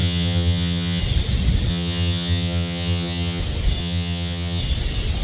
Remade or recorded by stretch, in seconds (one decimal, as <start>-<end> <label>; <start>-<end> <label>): 0.0-1.0 remade; 1.0-1.7 recorded; 1.7-3.4 remade; 3.4-3.8 recorded; 3.8-4.6 remade; 4.6-5.2 recorded